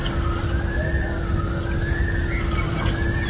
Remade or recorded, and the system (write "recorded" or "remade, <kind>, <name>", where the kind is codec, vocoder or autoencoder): recorded